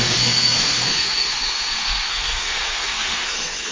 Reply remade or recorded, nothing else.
remade